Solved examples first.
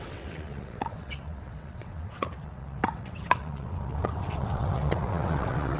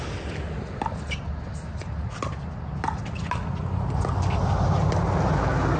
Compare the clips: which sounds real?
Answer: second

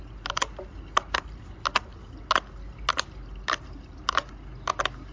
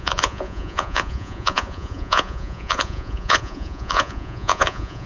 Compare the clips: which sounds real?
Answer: first